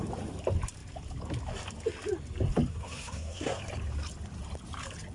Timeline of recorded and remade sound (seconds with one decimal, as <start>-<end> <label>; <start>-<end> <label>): 0.0-2.7 recorded; 2.7-3.6 remade; 3.6-5.1 recorded